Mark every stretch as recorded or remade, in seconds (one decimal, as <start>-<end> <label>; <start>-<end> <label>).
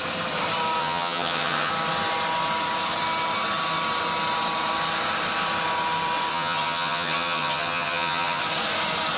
0.0-0.8 recorded; 0.8-1.7 remade; 1.7-6.3 recorded; 6.3-8.4 remade; 8.4-9.2 recorded